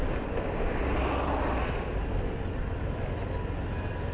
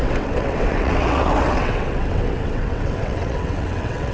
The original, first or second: first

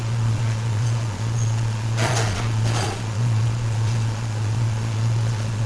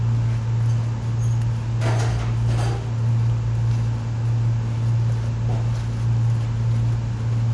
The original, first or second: second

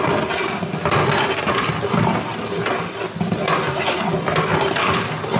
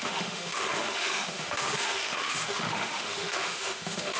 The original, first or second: first